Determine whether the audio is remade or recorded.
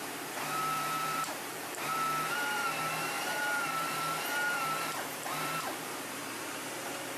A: remade